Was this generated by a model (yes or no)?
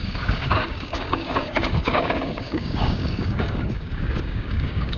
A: yes